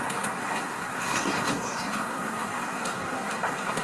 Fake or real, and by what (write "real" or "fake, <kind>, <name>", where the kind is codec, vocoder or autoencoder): fake, codec, SNAC